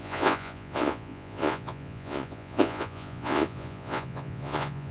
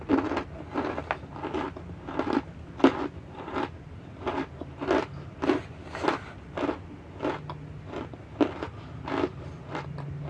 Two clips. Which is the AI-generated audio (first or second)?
first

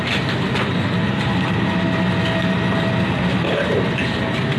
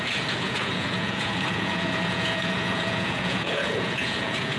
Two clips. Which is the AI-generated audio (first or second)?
second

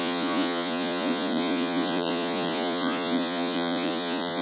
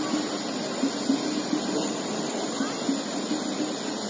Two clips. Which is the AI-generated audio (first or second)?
first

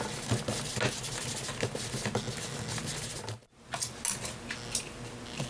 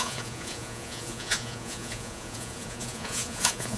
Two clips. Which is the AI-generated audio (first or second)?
second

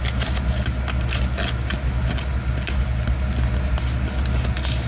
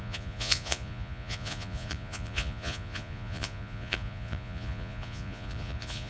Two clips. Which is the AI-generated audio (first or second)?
second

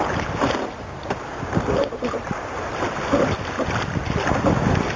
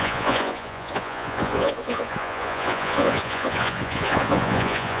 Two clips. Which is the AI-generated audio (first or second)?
second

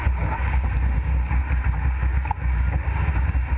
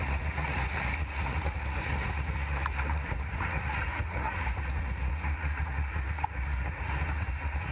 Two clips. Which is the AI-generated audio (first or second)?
second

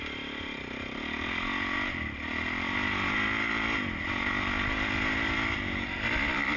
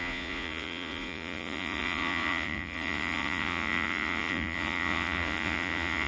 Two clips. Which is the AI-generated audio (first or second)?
second